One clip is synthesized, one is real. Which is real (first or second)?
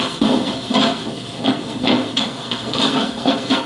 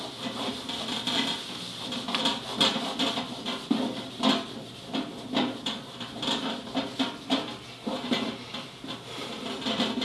second